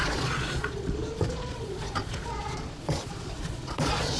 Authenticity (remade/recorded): remade